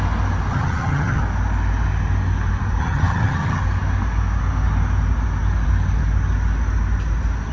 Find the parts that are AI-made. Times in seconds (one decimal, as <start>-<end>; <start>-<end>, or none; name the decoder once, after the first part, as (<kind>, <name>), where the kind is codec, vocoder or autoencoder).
0.5-1.2 (vocoder, HiFi-GAN); 2.8-3.6